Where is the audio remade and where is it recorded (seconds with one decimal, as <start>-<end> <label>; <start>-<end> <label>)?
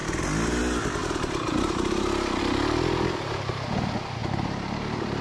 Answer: 0.0-5.2 recorded